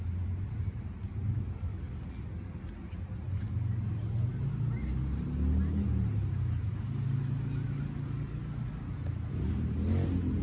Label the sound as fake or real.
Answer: real